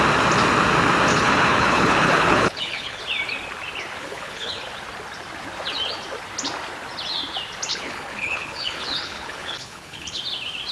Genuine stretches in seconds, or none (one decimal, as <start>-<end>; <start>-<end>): 0.0-1.1; 3.0-4.0; 4.6-7.7; 10.2-10.7